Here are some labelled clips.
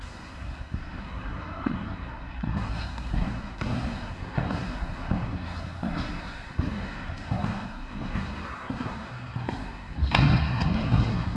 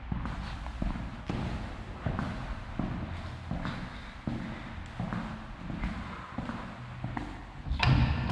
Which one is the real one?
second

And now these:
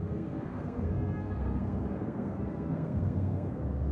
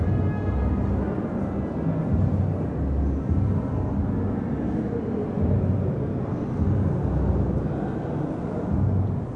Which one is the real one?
second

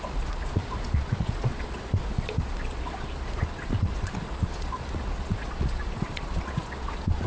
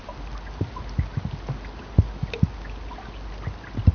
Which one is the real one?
second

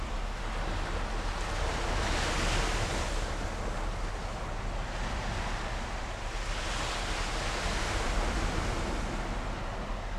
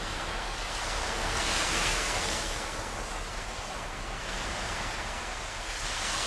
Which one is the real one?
first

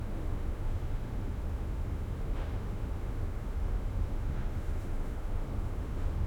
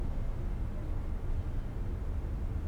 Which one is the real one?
second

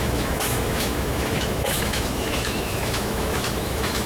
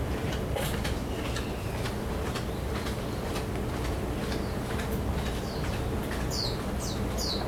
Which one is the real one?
second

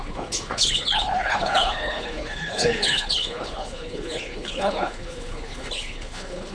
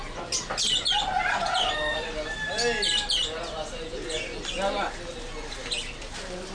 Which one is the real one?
second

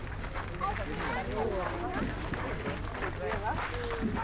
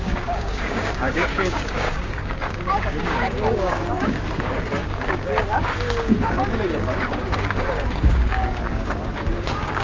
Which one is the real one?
first